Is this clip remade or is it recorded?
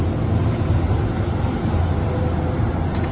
recorded